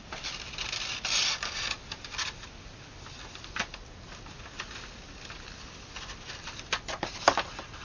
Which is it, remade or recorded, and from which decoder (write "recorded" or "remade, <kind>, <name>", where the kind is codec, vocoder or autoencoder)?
recorded